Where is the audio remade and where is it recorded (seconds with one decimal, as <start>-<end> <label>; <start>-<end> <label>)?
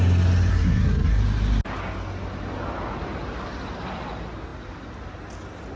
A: 0.0-0.5 recorded; 0.5-1.2 remade; 1.2-5.8 recorded